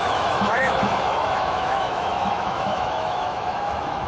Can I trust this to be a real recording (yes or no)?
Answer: no